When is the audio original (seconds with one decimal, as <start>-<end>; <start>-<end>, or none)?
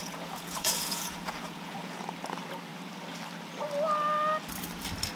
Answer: 2.0-5.2